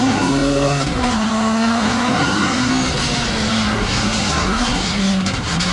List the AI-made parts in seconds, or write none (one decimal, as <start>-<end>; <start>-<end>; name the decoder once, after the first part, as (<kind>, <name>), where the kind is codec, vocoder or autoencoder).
0.0-2.7 (codec, SNAC); 3.5-5.7